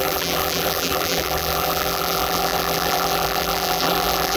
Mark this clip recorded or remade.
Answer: remade